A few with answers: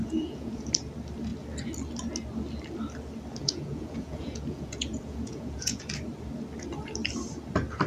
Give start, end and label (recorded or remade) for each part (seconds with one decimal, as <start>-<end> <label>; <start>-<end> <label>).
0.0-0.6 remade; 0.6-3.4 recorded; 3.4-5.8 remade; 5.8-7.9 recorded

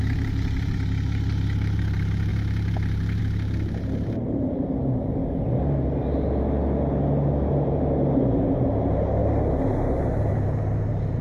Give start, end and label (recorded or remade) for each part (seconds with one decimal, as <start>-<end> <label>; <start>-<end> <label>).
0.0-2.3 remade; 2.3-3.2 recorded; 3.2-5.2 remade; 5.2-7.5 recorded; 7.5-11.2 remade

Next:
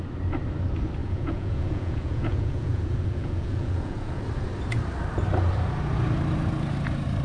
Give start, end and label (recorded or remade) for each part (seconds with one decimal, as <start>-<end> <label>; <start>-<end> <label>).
0.0-1.0 recorded; 1.0-4.2 remade; 4.2-7.2 recorded

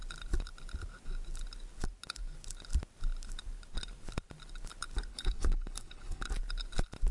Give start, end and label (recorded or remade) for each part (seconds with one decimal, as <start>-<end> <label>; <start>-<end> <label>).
0.0-5.1 recorded; 5.1-6.3 remade; 6.3-7.1 recorded

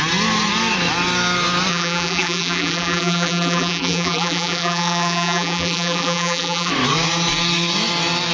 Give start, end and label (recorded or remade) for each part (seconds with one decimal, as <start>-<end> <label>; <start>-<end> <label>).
0.0-1.7 recorded; 1.7-6.7 remade; 6.7-8.3 recorded

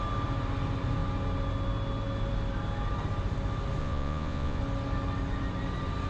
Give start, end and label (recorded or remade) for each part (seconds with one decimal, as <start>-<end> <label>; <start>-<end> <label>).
0.0-3.8 recorded; 3.8-4.6 remade; 4.6-6.1 recorded